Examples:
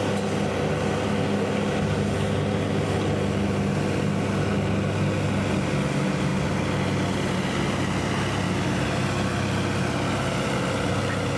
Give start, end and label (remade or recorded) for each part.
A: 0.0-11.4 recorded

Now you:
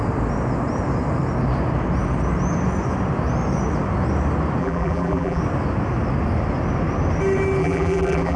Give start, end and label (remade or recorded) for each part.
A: 0.0-4.6 recorded; 4.6-5.4 remade; 5.4-7.6 recorded; 7.6-8.4 remade

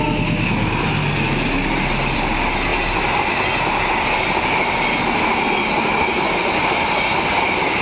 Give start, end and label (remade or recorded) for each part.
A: 0.0-7.8 recorded

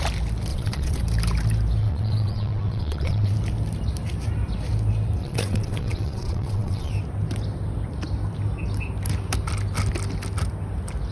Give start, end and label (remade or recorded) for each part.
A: 0.0-0.5 recorded; 0.5-1.0 remade; 1.0-1.8 recorded; 1.8-3.3 remade; 3.3-5.2 recorded; 5.2-6.9 remade; 6.9-11.1 recorded

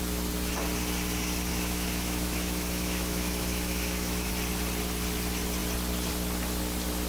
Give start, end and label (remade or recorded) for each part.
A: 0.0-1.5 recorded; 1.5-4.3 remade; 4.3-7.1 recorded

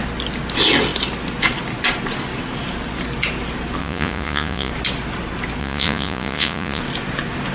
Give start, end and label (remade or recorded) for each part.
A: 0.0-3.8 recorded; 3.8-4.7 remade; 4.7-5.6 recorded; 5.6-6.8 remade; 6.8-7.5 recorded

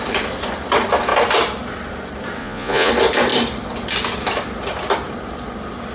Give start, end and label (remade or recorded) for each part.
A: 0.0-2.4 recorded; 2.4-2.9 remade; 2.9-5.9 recorded

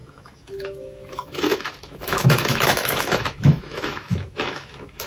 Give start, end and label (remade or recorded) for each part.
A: 0.0-5.1 remade